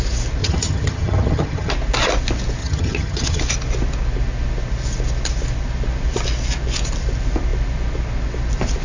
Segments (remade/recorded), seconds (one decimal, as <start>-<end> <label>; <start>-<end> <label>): 0.0-0.4 recorded; 0.4-1.7 remade; 1.7-2.6 recorded; 2.6-3.4 remade; 3.4-8.8 recorded